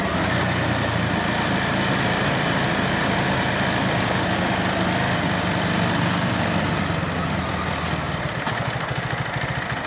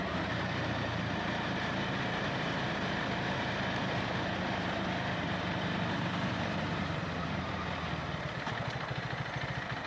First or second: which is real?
first